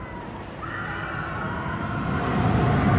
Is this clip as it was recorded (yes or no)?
yes